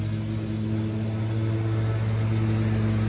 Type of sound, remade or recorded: recorded